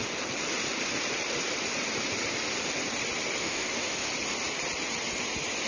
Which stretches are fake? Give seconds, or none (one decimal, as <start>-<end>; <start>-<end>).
3.4-4.1